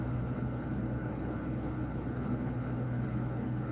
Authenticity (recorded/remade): remade